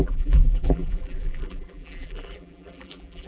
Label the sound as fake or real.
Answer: fake